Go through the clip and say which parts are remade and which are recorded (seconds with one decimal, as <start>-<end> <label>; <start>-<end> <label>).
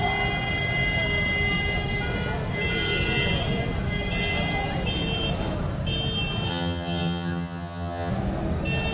0.0-6.5 recorded; 6.5-8.1 remade; 8.1-8.9 recorded